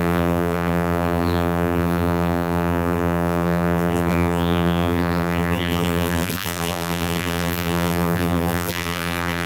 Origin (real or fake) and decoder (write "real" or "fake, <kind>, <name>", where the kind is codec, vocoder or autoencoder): fake, vocoder, BigVGAN v2